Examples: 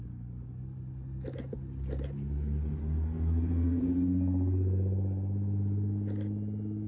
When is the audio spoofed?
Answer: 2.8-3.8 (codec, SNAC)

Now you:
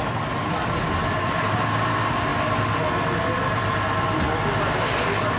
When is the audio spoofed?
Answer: none

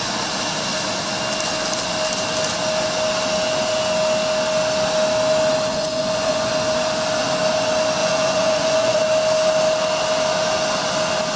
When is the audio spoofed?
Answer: 5.7-6.5 (vocoder, Vocos); 8.0-9.0

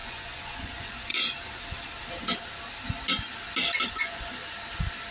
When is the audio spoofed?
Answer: 0.0-1.1 (vocoder, Vocos); 3.9-4.4

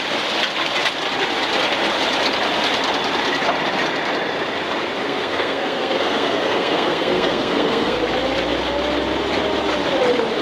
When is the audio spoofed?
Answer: 5.0-8.0 (codec, SNAC)

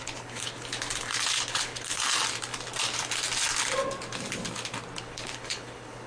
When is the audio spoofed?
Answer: 0.0-0.7 (codec, HILCodec); 1.5-2.2; 5.0-6.1